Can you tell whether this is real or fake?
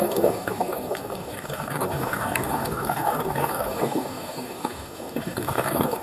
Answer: fake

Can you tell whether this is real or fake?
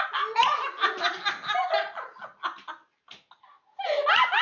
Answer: real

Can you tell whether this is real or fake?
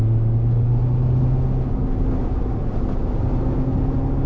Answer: real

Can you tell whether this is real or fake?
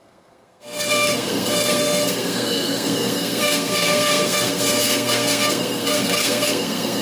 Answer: fake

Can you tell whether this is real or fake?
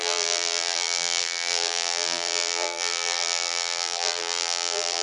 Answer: fake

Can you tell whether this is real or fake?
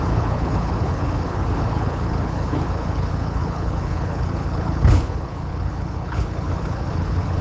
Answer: fake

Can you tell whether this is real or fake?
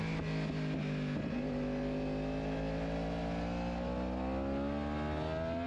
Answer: real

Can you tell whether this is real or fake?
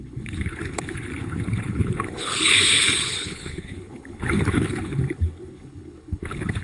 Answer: fake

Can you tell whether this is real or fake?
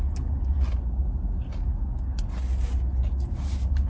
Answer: real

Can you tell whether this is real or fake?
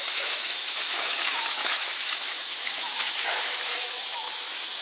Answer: fake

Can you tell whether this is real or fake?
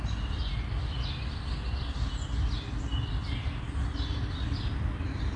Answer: real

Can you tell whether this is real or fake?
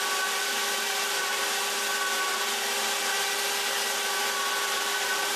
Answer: real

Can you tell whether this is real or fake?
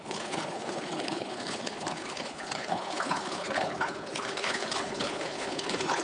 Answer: fake